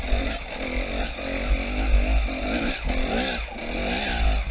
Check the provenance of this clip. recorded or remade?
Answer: recorded